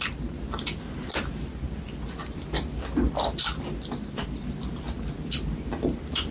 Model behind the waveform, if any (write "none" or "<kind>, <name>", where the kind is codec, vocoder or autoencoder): none